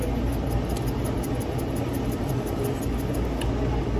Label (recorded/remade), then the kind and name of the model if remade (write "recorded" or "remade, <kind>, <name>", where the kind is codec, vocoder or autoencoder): recorded